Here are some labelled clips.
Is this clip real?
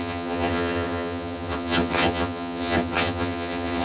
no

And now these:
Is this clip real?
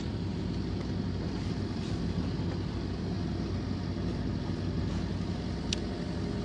no